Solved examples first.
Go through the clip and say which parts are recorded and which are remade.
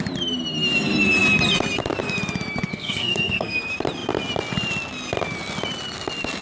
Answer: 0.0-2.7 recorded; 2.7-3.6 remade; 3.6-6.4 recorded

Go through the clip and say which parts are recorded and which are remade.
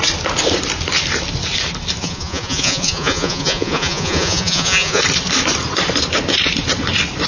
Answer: 0.0-2.0 recorded; 2.0-5.0 remade; 5.0-7.3 recorded